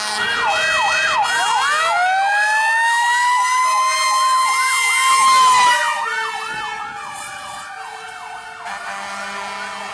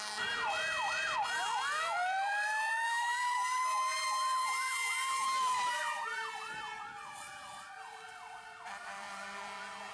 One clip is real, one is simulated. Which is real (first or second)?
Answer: first